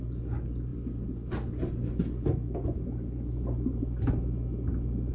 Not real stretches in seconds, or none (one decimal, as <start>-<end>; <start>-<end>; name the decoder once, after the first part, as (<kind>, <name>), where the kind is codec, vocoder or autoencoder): none